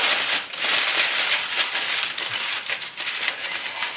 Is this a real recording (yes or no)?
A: yes